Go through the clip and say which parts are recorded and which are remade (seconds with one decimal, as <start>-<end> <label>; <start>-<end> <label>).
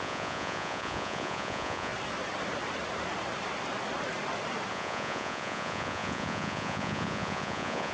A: 0.0-1.9 remade; 1.9-4.7 recorded; 4.7-7.9 remade